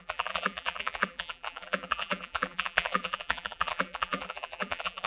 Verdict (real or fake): fake